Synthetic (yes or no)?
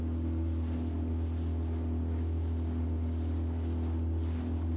no